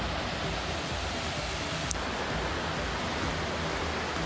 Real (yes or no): yes